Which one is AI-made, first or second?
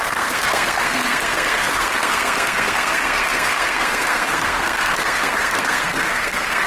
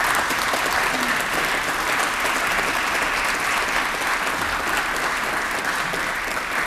first